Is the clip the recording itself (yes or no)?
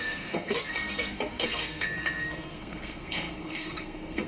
no